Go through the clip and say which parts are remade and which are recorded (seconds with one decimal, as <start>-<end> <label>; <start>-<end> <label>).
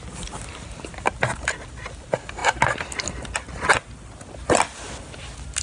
0.0-5.6 recorded